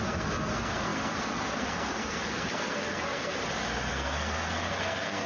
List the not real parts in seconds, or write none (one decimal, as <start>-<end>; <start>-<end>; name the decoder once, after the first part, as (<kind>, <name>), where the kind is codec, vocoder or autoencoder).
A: 0.0-3.4 (codec, SNAC); 3.9-5.3